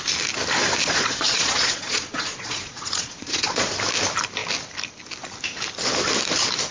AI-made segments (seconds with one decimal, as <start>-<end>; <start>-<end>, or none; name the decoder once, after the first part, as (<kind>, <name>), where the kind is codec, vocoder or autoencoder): 0.8-3.7 (vocoder, Vocos)